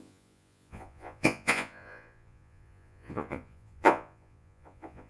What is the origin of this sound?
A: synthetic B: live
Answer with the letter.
A